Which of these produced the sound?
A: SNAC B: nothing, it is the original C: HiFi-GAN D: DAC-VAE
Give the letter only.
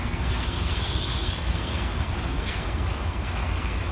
A